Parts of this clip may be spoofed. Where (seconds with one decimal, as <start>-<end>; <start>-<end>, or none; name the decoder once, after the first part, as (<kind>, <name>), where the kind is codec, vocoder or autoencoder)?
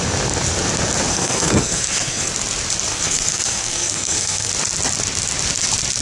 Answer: 1.1-2.3 (codec, SNAC); 2.9-4.5